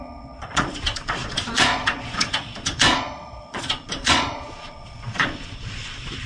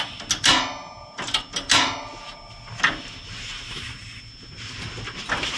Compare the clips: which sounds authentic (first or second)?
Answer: second